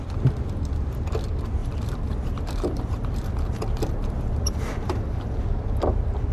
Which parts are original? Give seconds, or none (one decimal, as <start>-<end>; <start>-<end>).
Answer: 0.0-1.6; 5.4-6.3

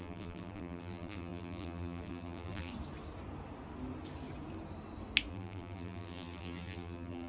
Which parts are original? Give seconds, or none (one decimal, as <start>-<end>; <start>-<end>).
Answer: 2.7-5.3

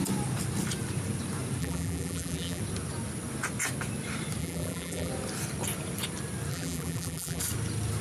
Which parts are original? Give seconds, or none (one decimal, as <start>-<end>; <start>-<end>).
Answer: 0.0-1.6; 2.6-4.4; 5.1-6.5; 7.4-8.0

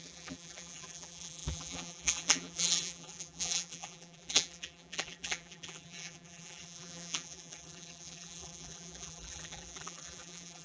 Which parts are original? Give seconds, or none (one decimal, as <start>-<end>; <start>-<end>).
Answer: none

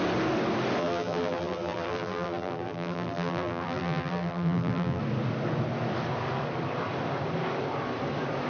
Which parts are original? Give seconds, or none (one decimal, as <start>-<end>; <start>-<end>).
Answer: 0.0-0.8; 5.0-8.5